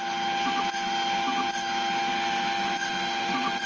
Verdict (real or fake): real